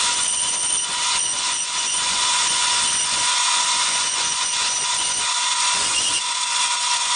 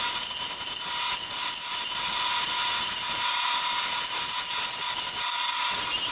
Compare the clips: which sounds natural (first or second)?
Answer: second